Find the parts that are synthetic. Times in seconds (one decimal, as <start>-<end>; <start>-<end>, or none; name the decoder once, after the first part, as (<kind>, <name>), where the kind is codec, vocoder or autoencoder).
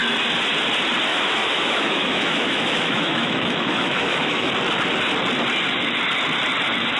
1.1-4.5 (autoencoder, DAC-VAE)